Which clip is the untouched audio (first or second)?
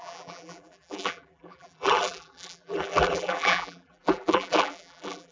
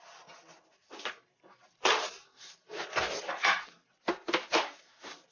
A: second